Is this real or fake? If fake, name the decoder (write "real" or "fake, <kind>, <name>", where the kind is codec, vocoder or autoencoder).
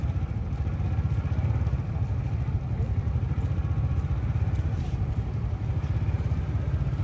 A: real